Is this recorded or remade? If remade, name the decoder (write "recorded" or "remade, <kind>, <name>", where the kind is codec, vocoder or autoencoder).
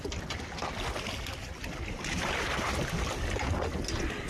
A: recorded